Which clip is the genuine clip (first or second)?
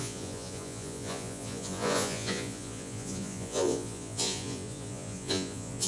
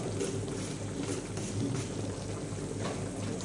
second